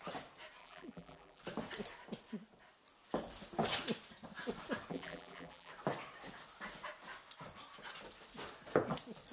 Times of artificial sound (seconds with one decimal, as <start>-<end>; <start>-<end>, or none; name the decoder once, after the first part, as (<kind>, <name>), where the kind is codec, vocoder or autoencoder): 0.6-1.4 (vocoder, BigVGAN v2); 4.9-5.7